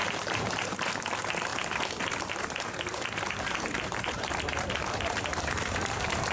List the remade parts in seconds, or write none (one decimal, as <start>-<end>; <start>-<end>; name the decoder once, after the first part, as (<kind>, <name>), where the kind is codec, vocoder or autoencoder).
0.0-0.9 (vocoder, BigVGAN v2); 1.5-4.6; 5.3-6.3